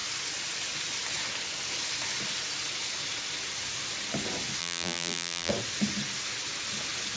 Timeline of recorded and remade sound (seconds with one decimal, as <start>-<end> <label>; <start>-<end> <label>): 0.0-4.6 recorded; 4.6-5.5 remade; 5.5-7.2 recorded